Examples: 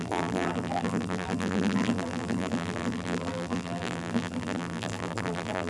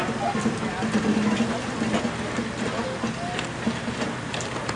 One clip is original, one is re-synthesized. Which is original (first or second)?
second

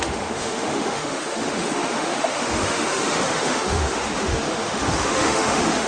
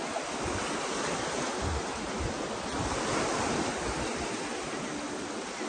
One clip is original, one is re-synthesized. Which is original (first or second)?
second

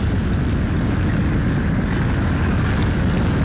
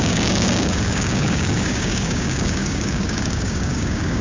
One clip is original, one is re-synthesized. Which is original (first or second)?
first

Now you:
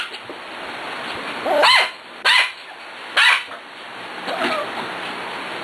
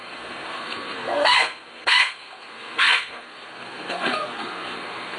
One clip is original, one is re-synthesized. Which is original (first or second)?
first